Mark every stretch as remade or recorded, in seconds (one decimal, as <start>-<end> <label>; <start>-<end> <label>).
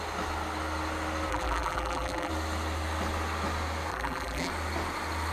0.0-1.3 recorded; 1.3-2.3 remade; 2.3-3.9 recorded; 3.9-4.5 remade; 4.5-5.3 recorded